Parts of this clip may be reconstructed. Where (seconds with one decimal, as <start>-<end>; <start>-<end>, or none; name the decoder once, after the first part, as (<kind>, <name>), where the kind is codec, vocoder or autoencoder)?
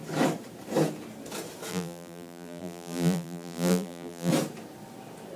1.7-4.3 (vocoder, BigVGAN v2)